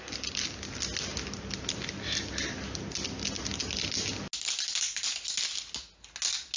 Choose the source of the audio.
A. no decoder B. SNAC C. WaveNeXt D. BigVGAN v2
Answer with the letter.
A